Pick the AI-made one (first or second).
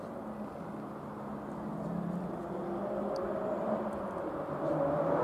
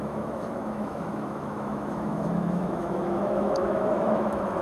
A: second